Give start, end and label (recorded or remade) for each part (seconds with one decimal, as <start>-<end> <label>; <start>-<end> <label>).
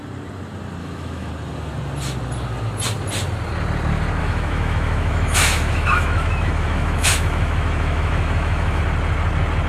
0.0-0.8 recorded; 0.8-1.3 remade; 1.3-4.2 recorded; 4.2-8.8 remade; 8.8-9.7 recorded